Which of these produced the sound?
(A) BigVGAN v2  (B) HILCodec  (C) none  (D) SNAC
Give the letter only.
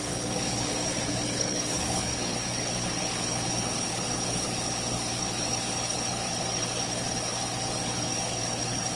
B